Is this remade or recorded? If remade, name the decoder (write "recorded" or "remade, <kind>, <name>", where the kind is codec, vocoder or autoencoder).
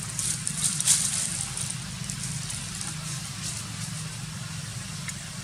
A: recorded